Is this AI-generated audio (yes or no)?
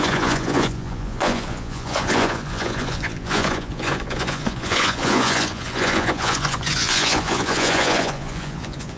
yes